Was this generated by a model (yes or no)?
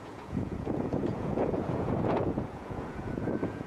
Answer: yes